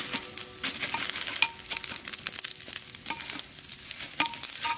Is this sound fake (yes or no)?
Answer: no